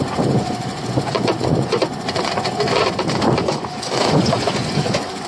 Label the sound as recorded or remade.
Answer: remade